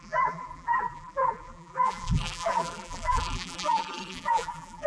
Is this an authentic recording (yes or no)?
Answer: no